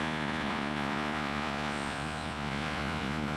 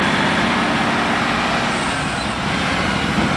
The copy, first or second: first